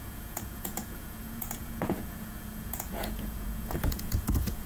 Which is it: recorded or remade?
remade